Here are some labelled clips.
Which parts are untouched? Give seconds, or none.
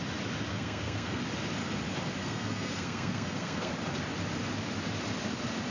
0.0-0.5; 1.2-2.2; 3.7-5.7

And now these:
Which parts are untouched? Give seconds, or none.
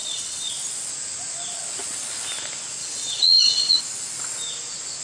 0.5-2.8; 3.8-5.0